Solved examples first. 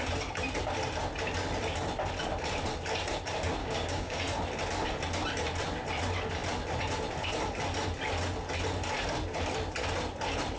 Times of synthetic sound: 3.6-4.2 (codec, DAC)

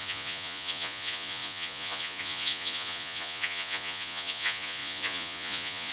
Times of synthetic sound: 0.0-5.9 (vocoder, Vocos)

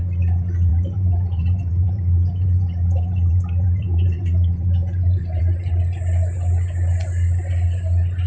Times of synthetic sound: 0.7-5.4 (vocoder, BigVGAN v2)

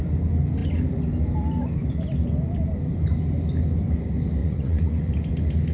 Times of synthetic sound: 4.4-5.1 (vocoder, Vocos)

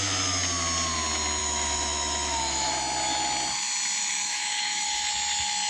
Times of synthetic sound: 1.4-2.7 (autoencoder, DAC-VAE); 4.0-5.1